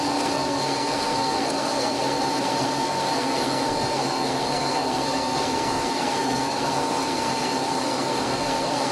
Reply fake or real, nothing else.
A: fake